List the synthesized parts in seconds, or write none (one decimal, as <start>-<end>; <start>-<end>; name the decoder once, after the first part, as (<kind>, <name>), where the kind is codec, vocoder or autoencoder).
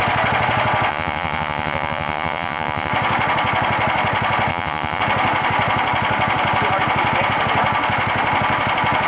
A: 0.9-2.9 (vocoder, Vocos); 4.5-5.0